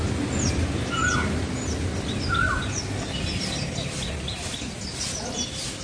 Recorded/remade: recorded